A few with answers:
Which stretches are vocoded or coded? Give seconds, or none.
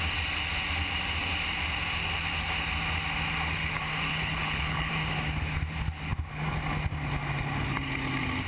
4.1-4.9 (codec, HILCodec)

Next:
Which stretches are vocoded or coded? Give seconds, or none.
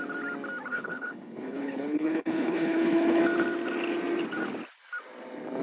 0.7-3.2 (codec, HILCodec)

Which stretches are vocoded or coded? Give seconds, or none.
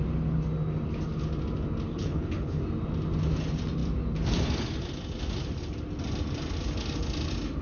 1.9-2.6 (codec, HILCodec)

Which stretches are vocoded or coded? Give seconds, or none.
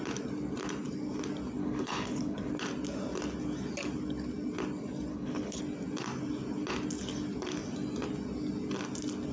1.6-2.5 (codec, HILCodec); 5.1-5.6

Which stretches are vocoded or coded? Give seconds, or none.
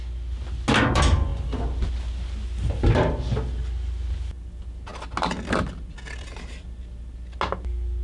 none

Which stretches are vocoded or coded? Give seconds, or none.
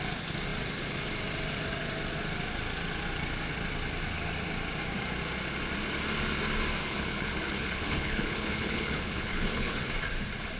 6.8-9.8 (codec, HILCodec)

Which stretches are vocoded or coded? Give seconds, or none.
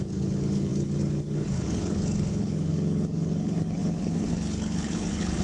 0.0-5.4 (codec, HILCodec)